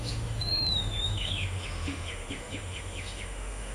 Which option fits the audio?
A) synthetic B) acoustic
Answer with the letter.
A